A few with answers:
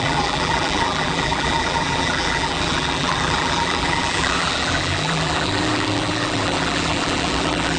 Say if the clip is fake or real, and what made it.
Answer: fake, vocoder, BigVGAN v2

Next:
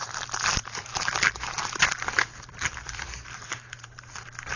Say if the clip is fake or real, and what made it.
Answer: fake, vocoder, BigVGAN v2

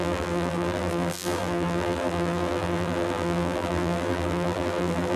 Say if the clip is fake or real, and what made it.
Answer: fake, vocoder, BigVGAN v2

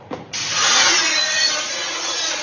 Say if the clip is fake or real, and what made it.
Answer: fake, vocoder, Vocos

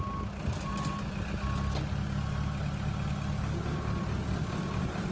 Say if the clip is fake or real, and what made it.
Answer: real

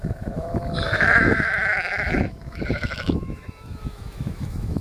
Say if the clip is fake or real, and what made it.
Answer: fake, autoencoder, DAC-VAE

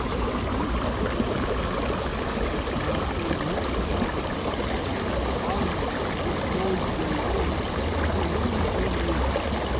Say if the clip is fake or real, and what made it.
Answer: real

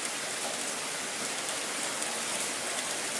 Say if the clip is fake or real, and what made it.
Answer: real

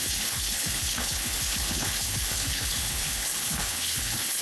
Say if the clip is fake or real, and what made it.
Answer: fake, codec, HILCodec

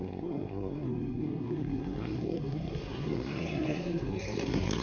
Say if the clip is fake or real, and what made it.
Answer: fake, codec, SNAC